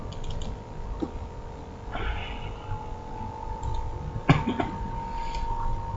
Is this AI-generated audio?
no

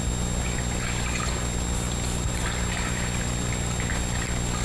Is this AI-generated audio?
no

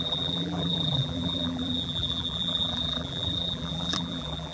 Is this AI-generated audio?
yes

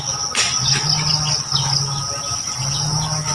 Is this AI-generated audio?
no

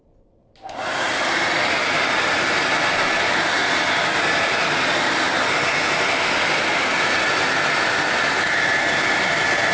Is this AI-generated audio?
no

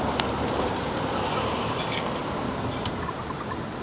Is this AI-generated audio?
yes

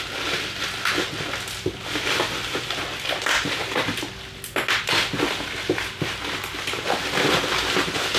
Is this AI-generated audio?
no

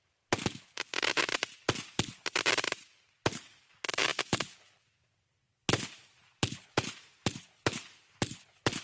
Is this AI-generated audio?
no